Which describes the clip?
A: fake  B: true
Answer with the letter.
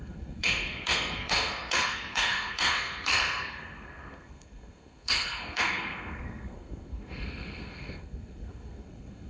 A